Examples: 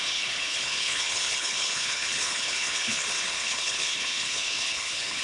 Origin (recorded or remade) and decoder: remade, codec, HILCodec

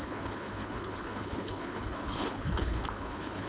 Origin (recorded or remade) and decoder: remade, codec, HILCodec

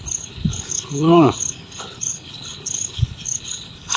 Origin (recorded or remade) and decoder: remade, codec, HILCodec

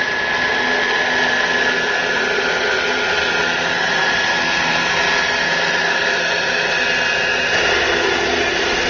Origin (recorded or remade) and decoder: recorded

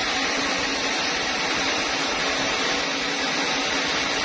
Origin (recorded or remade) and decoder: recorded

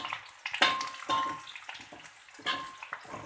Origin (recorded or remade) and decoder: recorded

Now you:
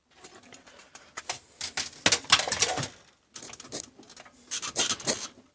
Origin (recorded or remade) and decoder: recorded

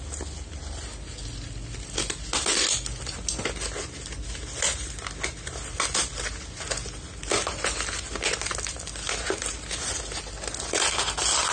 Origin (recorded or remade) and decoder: recorded